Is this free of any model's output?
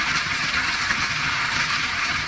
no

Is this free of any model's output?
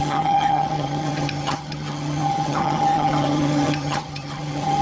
no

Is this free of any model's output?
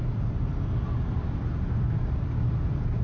yes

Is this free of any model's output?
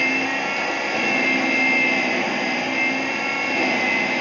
yes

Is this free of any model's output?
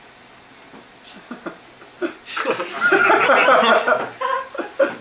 yes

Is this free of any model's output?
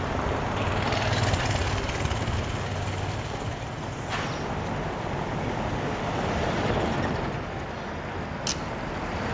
yes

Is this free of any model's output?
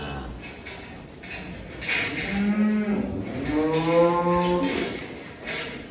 yes